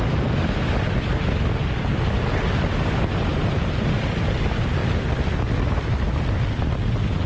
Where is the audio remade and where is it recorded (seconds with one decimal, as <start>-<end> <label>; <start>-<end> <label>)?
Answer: 0.0-3.3 recorded; 3.3-4.1 remade; 4.1-7.3 recorded